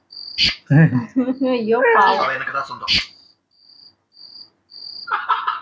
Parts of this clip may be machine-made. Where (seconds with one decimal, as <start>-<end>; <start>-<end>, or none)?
none